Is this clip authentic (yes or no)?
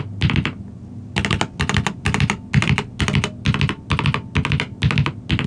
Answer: yes